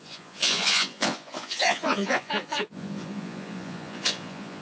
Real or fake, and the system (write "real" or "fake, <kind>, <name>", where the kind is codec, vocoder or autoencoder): fake, vocoder, Vocos